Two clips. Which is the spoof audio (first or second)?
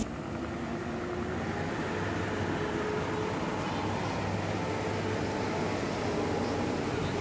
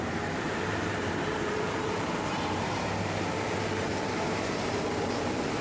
second